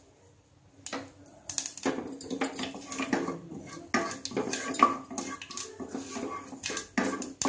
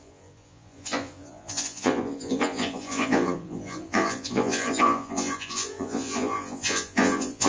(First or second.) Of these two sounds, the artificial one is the second